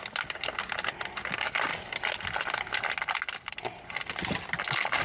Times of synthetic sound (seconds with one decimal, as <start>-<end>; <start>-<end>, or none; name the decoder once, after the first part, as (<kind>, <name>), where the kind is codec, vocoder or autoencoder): none